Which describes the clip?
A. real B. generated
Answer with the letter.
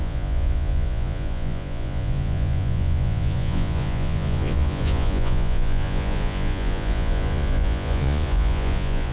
B